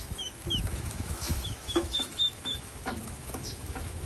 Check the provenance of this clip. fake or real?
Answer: fake